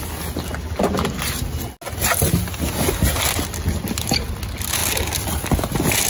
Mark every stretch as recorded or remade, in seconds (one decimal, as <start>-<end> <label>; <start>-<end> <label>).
0.0-6.1 recorded